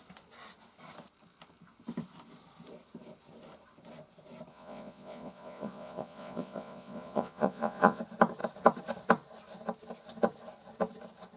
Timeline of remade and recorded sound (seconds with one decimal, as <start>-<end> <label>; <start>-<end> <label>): 0.0-4.5 recorded; 4.5-8.0 remade; 8.0-11.4 recorded